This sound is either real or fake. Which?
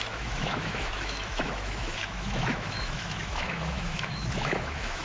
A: fake